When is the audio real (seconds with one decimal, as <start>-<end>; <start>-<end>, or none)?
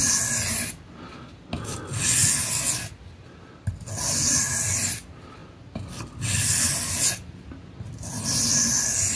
0.0-9.2